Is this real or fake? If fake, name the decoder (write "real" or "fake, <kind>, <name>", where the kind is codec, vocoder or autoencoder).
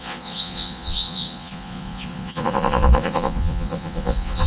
fake, vocoder, Vocos